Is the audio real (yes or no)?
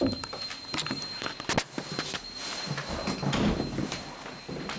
yes